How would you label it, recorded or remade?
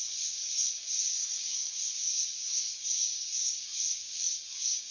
remade